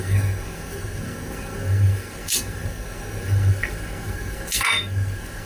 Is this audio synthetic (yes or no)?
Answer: yes